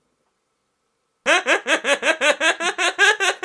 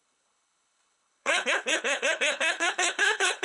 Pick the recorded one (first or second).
first